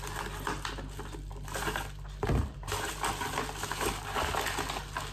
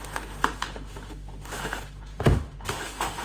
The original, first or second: first